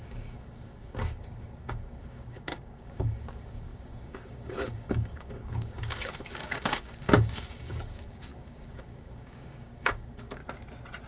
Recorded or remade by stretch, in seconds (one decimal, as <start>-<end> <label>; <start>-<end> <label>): 0.0-10.4 remade; 10.4-11.1 recorded